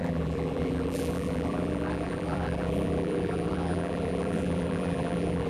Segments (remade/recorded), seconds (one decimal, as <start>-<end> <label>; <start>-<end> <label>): 0.0-5.5 remade